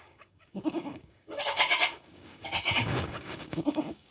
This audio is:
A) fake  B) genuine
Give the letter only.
A